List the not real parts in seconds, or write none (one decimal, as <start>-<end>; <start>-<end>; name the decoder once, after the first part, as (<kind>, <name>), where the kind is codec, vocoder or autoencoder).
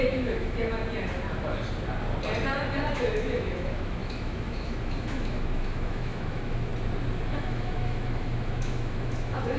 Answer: 0.0-0.8 (autoencoder, DAC-VAE); 2.9-6.7; 7.3-9.6